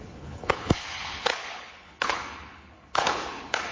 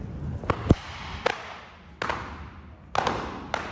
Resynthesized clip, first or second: first